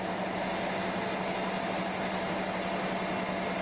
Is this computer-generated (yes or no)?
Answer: no